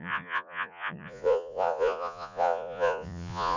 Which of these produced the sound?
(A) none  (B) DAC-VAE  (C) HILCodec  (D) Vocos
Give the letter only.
D